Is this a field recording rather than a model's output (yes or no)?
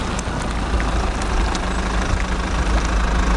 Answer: yes